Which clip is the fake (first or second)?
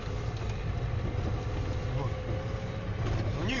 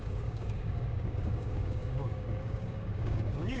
second